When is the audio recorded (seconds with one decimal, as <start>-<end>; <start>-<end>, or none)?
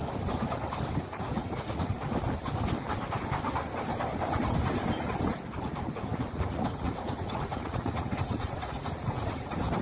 0.0-1.0; 2.0-5.6